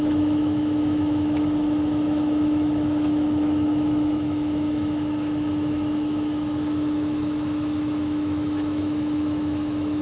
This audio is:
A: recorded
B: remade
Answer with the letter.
B